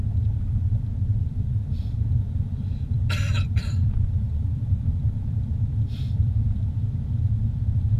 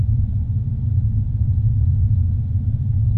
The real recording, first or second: second